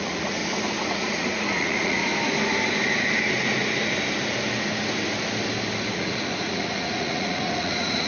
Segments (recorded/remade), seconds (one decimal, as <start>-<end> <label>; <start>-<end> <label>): 0.0-0.4 remade; 0.4-0.9 recorded; 0.9-2.1 remade; 2.1-5.9 recorded; 5.9-8.1 remade

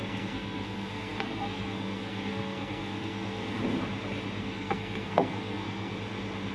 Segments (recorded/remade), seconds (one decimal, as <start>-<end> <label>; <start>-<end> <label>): 0.0-3.6 remade; 3.6-4.4 recorded; 4.4-5.9 remade; 5.9-6.5 recorded

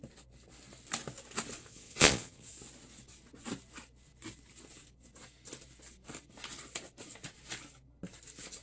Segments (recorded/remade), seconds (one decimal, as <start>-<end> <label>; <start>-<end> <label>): 0.0-1.6 recorded; 1.6-2.5 remade; 2.5-8.6 recorded

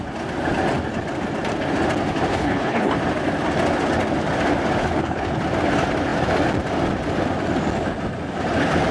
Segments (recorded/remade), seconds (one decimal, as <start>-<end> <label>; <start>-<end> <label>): 0.0-2.3 recorded; 2.3-2.9 remade; 2.9-4.8 recorded; 4.8-5.4 remade; 5.4-8.9 recorded